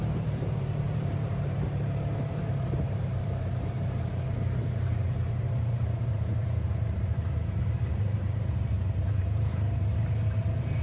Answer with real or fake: fake